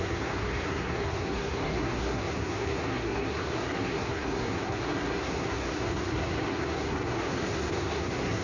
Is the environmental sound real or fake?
fake